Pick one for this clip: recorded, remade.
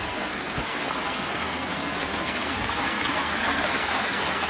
remade